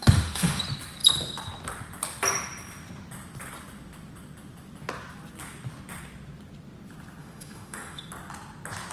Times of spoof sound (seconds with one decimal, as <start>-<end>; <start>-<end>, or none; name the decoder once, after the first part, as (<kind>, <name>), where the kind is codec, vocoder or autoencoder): 0.0-0.6 (autoencoder, DAC-VAE); 7.2-8.1